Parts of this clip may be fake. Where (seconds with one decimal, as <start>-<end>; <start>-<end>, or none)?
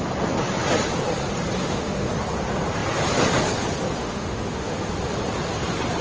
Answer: 1.6-2.1; 4.0-4.9